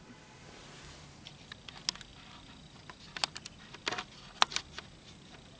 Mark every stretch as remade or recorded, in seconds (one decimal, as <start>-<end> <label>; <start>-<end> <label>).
0.0-5.6 recorded